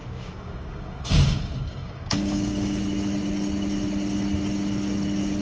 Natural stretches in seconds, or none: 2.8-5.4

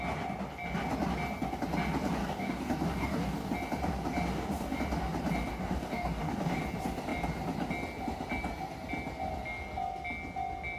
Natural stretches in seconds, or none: 0.0-2.2; 3.5-4.3; 4.8-5.5; 6.6-10.8

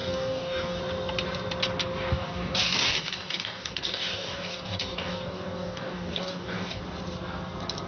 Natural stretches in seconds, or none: 0.8-2.1; 6.8-7.9

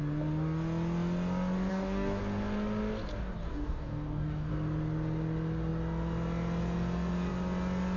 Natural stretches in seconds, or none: 0.0-1.7; 2.2-3.2; 4.5-8.0

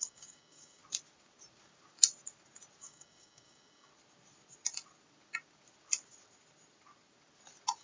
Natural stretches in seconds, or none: 0.8-2.8; 3.9-7.8